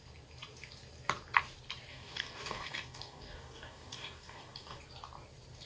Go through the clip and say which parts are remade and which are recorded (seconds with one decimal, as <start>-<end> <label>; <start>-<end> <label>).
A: 0.0-1.9 recorded; 1.9-4.8 remade; 4.8-5.7 recorded

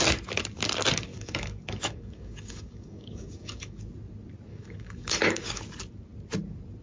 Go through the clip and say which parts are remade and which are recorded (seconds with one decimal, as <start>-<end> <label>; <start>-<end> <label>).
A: 0.0-1.1 recorded; 1.1-3.8 remade; 3.8-4.5 recorded; 4.5-5.6 remade; 5.6-6.8 recorded

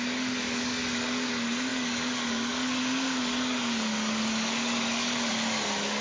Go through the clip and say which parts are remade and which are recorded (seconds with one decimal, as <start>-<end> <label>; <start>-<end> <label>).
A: 0.0-6.0 remade